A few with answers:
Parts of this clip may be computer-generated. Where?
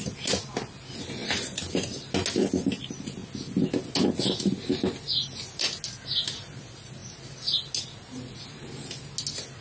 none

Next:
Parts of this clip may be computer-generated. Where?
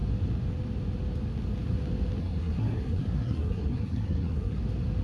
2.2-4.6 (codec, SNAC)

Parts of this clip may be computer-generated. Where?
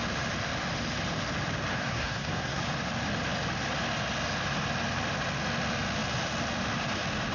1.7-2.6 (codec, SNAC)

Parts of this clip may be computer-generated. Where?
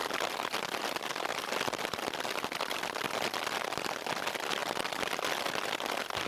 none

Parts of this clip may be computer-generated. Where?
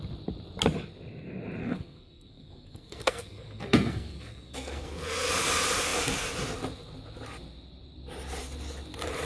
1.6-5.3 (codec, SNAC)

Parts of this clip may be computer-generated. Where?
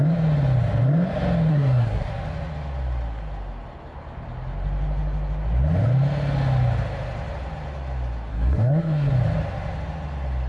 1.5-2.1 (codec, SNAC); 8.3-9.1